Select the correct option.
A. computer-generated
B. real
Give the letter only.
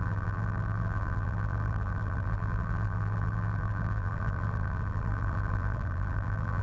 A